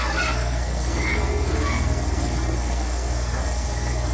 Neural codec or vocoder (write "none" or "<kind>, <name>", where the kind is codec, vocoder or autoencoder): codec, SNAC